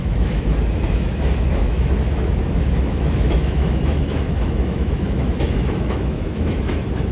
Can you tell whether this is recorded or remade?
remade